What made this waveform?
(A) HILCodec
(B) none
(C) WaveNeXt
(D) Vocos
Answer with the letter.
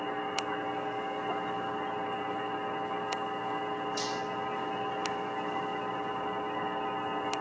B